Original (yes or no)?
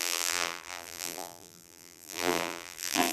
no